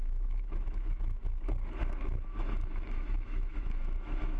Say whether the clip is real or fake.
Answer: fake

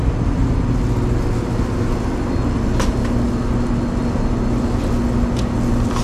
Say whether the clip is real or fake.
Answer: real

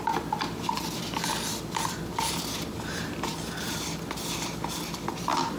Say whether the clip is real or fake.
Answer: fake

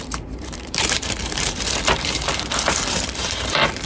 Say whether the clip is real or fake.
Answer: fake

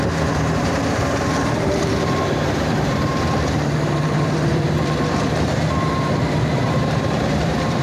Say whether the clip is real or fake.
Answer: fake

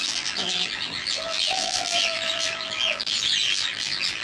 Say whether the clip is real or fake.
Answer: fake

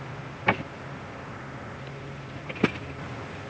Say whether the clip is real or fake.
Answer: real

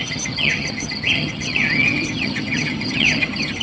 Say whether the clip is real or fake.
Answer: fake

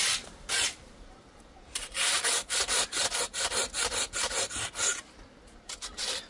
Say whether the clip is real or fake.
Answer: real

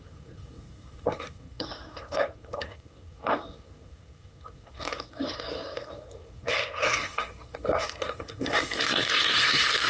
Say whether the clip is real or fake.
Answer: fake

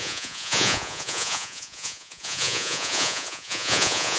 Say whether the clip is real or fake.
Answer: fake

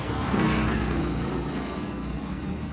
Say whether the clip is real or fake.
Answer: fake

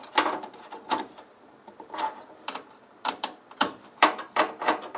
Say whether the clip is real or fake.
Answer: fake